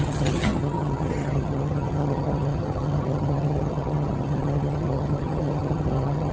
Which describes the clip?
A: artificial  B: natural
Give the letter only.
A